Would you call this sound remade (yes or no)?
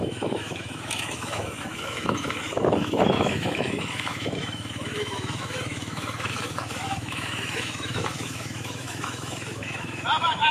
yes